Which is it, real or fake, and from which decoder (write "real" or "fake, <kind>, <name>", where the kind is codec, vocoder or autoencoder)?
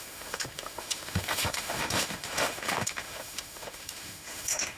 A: fake, autoencoder, DAC-VAE